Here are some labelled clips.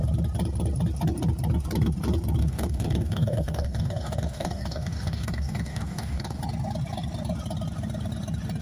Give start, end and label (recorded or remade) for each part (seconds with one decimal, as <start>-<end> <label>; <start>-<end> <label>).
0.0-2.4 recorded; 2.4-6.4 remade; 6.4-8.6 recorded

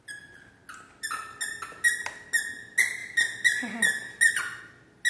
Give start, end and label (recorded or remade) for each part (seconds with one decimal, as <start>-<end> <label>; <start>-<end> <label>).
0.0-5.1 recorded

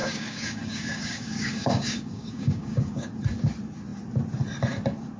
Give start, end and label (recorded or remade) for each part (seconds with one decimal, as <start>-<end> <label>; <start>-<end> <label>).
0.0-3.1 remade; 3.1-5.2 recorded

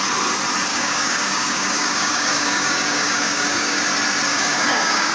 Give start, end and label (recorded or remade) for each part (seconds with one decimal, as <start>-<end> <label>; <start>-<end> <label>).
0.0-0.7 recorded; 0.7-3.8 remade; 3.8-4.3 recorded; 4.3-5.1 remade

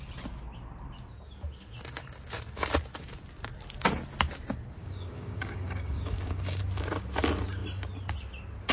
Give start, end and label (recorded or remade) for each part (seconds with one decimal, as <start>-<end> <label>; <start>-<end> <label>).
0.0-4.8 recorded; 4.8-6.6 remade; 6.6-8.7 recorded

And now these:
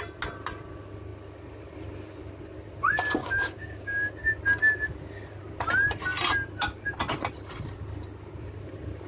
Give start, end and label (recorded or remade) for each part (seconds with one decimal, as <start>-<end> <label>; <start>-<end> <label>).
0.0-3.2 recorded; 3.2-4.1 remade; 4.1-9.1 recorded

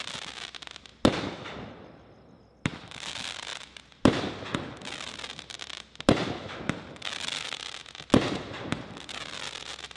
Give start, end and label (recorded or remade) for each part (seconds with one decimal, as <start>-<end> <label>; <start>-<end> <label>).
0.0-10.0 recorded

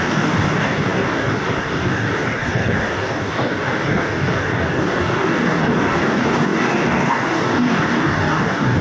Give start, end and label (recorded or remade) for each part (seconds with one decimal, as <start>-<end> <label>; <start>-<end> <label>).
0.0-8.8 remade